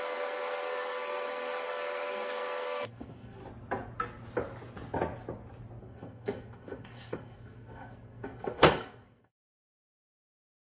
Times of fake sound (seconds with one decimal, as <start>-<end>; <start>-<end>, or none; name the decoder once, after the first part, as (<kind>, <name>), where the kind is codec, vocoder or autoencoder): 0.0-3.4 (codec, SNAC); 5.8-10.7